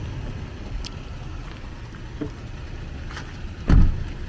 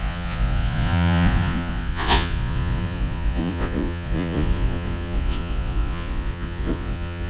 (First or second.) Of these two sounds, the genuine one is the first